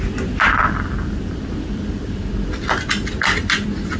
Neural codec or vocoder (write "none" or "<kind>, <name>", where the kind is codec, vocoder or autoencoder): none